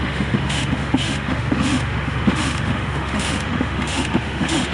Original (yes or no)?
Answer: no